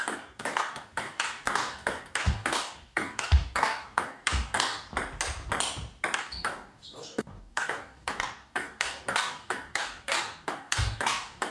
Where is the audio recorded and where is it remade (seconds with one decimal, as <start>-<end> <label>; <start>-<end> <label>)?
0.0-4.9 remade; 4.9-6.2 recorded; 6.2-11.5 remade